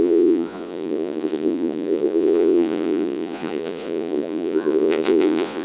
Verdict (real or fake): fake